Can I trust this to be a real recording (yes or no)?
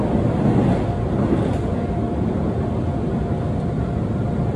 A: yes